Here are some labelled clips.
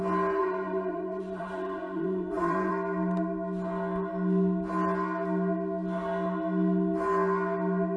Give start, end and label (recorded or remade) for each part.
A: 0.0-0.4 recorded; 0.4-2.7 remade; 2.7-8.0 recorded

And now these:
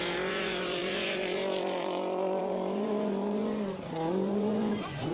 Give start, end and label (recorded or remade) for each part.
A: 0.0-5.1 remade

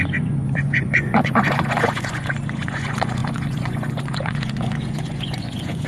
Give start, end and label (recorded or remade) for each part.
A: 0.0-5.9 remade

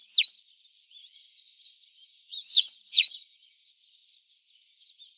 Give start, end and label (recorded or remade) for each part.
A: 0.0-1.0 recorded; 1.0-3.7 remade; 3.7-5.2 recorded

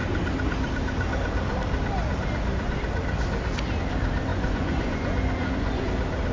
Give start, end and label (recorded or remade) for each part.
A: 0.0-4.3 recorded; 4.3-5.8 remade; 5.8-6.3 recorded

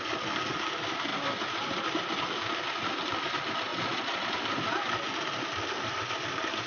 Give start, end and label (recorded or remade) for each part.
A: 0.0-3.7 recorded; 3.7-4.3 remade; 4.3-6.7 recorded